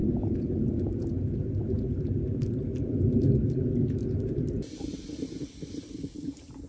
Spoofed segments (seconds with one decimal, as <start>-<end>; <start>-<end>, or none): 0.0-1.0